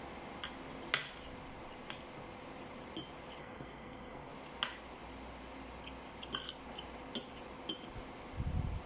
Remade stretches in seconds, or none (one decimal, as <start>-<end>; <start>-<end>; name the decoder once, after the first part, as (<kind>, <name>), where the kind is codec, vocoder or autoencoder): 3.4-4.3 (codec, SNAC)